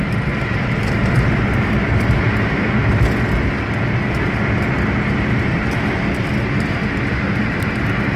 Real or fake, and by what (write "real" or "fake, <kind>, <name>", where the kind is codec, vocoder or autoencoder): real